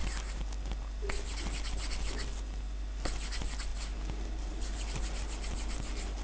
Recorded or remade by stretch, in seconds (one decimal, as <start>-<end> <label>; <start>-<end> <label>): 0.0-6.2 recorded